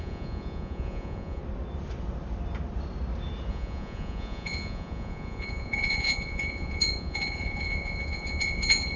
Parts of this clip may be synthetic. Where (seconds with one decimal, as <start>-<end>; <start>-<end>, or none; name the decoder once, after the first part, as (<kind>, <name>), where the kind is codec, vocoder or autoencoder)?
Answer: 0.0-1.4 (vocoder, Vocos); 3.5-9.0